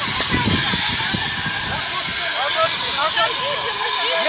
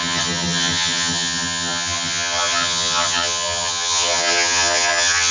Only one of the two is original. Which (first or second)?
first